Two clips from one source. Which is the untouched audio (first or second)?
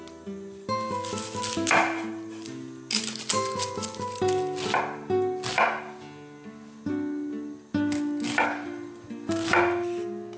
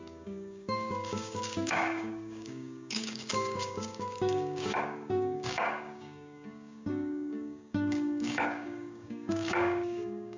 first